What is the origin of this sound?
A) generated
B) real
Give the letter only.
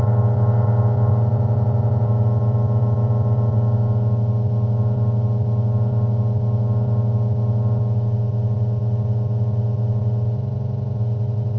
B